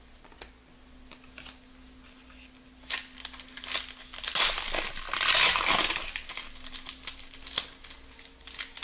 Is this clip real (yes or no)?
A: yes